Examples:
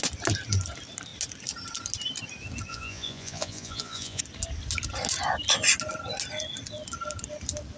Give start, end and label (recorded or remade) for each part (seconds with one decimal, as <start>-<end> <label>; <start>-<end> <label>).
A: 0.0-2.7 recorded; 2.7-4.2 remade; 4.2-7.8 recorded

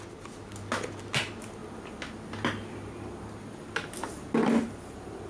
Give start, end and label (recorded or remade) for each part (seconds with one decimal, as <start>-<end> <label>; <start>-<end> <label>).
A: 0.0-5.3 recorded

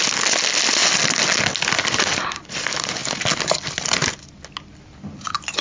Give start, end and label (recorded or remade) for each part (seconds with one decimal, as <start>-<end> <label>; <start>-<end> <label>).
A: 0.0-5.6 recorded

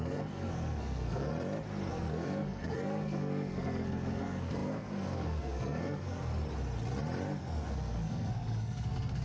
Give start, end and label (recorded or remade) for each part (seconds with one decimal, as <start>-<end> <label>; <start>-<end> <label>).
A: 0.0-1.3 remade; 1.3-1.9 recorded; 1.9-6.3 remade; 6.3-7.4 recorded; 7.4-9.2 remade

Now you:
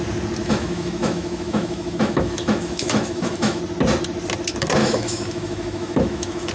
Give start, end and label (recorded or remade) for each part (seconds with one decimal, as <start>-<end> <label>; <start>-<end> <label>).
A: 0.0-0.4 recorded; 0.4-3.6 remade; 3.6-4.8 recorded; 4.8-6.5 remade